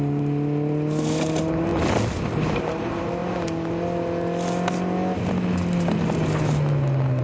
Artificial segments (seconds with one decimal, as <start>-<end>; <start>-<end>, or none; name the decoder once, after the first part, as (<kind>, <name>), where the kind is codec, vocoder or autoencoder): none